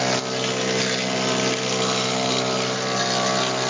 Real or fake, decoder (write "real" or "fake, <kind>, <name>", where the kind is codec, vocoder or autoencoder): real